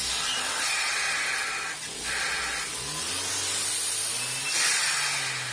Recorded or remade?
recorded